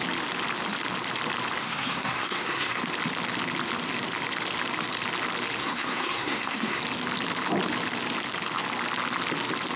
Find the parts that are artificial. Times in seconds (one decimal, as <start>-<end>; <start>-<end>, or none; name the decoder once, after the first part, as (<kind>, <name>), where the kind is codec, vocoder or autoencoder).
1.6-2.8 (codec, SNAC); 5.6-6.8